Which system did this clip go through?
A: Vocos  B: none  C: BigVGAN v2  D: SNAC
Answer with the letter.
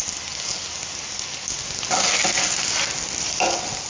B